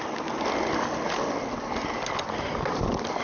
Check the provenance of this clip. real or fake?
real